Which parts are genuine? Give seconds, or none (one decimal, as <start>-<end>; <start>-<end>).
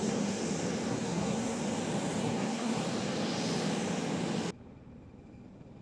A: 0.4-0.9; 1.6-2.2; 2.8-5.8